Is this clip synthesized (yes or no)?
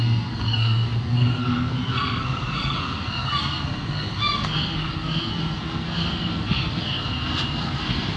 yes